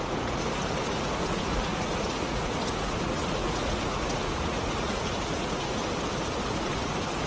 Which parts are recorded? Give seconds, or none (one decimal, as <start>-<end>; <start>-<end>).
5.8-6.6